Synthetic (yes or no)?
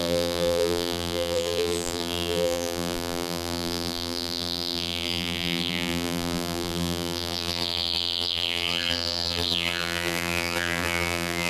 yes